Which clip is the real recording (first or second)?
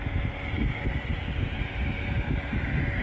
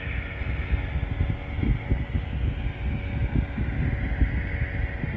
second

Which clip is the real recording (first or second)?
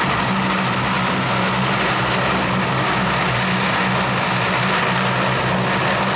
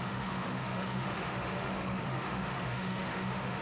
first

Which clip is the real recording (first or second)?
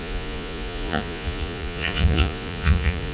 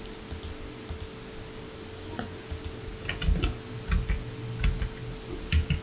second